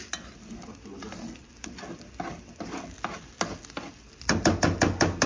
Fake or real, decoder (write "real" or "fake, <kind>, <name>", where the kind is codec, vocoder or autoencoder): real